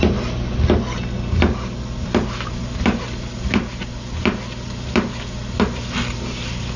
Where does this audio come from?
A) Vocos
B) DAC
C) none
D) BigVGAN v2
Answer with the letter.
C